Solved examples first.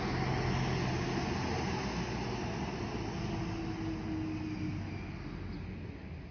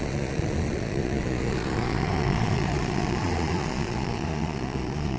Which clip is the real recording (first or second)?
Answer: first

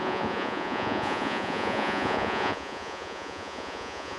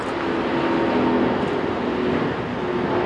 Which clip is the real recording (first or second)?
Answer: second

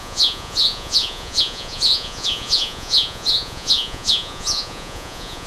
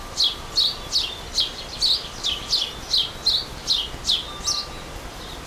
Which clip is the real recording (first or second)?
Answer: second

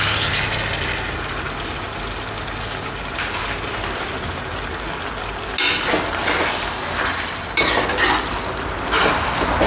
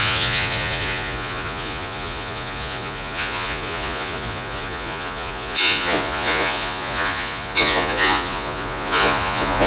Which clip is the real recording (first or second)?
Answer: first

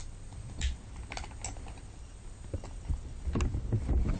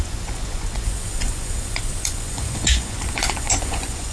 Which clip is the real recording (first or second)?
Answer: first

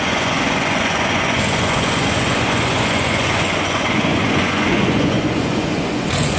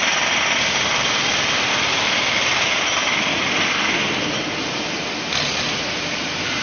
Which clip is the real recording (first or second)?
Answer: second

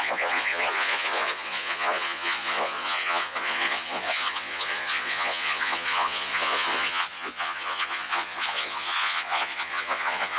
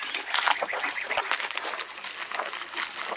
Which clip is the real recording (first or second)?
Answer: second